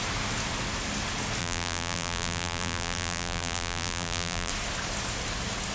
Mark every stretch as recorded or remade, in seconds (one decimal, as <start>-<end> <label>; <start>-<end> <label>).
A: 0.0-1.4 recorded; 1.4-4.5 remade; 4.5-5.7 recorded